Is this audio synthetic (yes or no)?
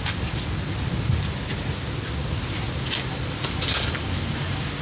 no